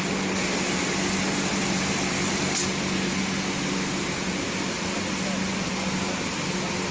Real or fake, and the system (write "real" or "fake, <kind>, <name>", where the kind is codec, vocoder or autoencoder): real